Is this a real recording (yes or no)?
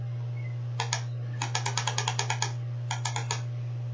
yes